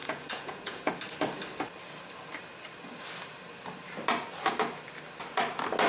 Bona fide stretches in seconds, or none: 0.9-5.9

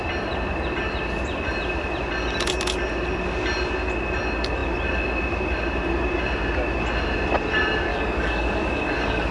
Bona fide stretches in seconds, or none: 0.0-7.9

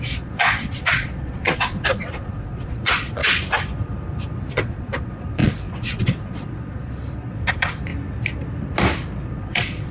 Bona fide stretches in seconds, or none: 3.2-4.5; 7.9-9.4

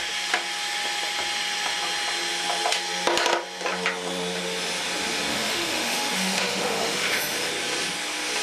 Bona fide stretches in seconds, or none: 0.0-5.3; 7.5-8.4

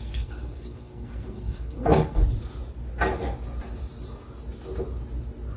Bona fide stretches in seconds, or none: 2.2-5.6

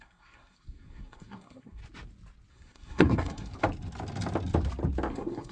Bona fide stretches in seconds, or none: 1.8-2.5; 3.5-5.1

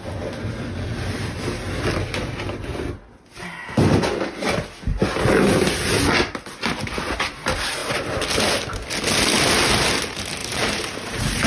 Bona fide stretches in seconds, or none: 0.0-10.4

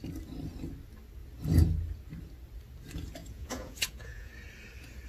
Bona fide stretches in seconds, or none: 0.0-3.2; 4.3-5.1